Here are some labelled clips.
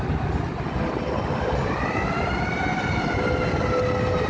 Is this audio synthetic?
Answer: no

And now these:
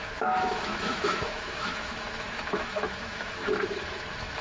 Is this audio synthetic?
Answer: yes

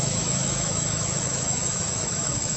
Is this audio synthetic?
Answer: yes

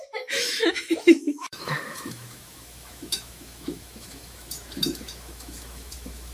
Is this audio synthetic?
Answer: yes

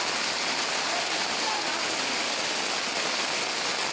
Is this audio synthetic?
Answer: no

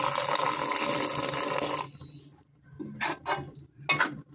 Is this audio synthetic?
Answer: no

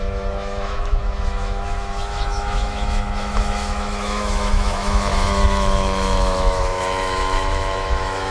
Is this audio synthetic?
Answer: yes